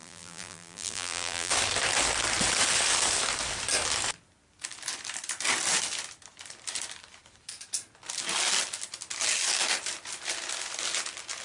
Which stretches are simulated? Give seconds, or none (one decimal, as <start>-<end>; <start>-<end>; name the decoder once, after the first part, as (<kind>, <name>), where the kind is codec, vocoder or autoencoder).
0.0-1.5 (vocoder, BigVGAN v2)

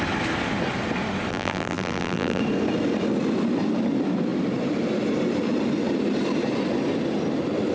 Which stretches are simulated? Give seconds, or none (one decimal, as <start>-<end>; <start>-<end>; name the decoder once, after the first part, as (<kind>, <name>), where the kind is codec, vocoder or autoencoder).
1.3-2.4 (vocoder, BigVGAN v2)

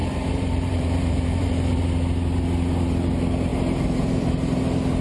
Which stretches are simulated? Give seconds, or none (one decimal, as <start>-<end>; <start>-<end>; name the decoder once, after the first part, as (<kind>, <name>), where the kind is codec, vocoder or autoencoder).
0.0-1.8 (vocoder, BigVGAN v2); 3.5-4.3

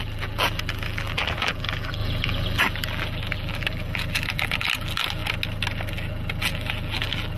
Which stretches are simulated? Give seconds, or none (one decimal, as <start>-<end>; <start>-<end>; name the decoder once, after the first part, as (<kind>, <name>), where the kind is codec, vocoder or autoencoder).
0.0-5.2 (vocoder, BigVGAN v2); 5.9-7.4

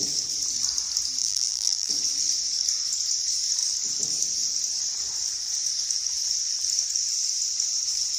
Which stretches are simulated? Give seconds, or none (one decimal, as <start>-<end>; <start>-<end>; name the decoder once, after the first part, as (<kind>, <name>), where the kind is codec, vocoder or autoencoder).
1.2-1.9 (vocoder, BigVGAN v2)

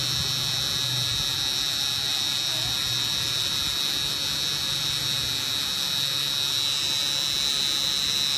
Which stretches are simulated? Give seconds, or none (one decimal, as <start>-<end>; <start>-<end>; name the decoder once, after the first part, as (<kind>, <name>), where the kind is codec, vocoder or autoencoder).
none

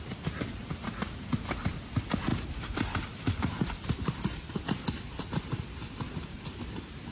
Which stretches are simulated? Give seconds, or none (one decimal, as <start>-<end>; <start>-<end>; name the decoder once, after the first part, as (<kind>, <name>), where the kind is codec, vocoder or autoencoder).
none

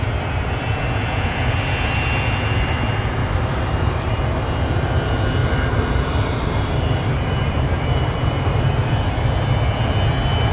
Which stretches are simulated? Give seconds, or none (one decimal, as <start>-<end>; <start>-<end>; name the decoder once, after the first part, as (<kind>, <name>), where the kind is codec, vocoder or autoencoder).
3.2-4.1 (vocoder, BigVGAN v2); 5.4-9.0